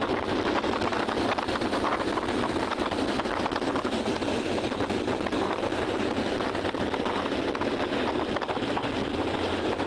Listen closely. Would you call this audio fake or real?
real